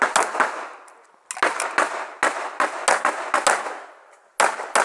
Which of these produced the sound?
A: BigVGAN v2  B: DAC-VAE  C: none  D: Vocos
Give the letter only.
C